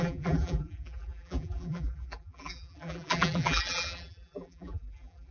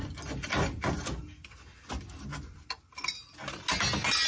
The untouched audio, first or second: second